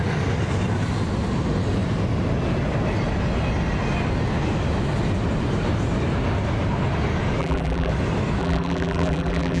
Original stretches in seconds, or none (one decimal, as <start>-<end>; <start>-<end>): 0.0-7.4; 7.9-8.4